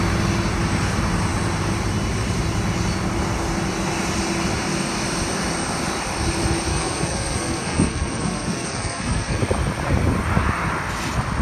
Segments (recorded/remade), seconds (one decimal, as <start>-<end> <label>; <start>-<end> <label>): 0.0-6.7 recorded; 6.7-9.4 remade; 9.4-11.4 recorded